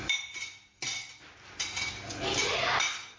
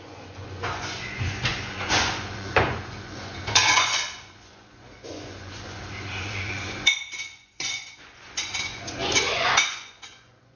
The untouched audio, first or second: first